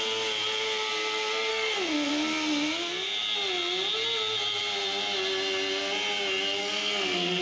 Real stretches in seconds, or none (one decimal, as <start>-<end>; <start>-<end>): 0.0-1.5; 2.1-6.6